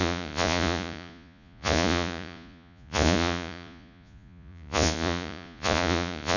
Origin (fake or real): fake